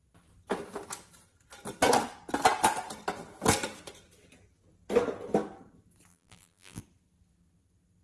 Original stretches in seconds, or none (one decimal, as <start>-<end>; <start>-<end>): 0.0-6.1; 6.8-8.0